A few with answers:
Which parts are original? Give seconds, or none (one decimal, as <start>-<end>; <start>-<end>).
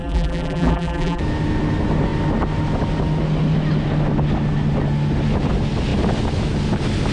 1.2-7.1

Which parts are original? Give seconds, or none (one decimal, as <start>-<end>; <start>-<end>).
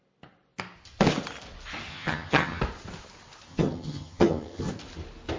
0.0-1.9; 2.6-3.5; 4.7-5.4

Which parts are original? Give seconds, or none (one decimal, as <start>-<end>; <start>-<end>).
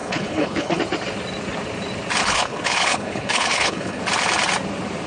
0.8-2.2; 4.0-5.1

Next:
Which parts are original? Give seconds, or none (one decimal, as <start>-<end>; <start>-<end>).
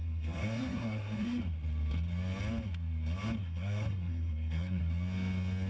1.4-3.4; 4.8-5.7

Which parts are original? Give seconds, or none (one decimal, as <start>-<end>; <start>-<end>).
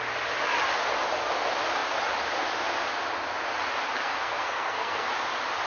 0.0-4.0; 5.1-5.7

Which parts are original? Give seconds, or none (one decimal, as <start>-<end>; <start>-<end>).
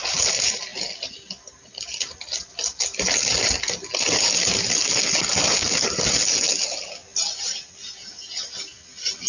0.0-9.3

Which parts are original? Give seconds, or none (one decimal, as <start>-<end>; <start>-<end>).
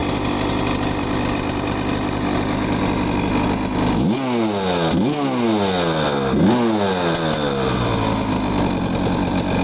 0.0-9.6